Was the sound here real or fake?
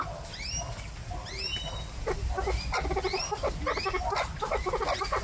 real